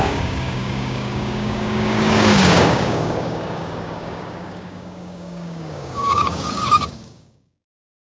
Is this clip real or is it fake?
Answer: fake